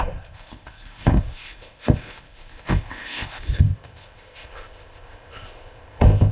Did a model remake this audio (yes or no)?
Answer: yes